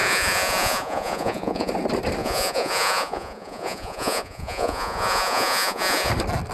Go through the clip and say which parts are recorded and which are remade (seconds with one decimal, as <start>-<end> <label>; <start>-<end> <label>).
0.0-1.7 remade; 1.7-2.2 recorded; 2.2-6.1 remade; 6.1-6.5 recorded